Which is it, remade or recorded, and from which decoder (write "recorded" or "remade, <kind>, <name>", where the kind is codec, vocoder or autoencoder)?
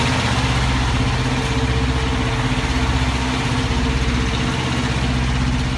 recorded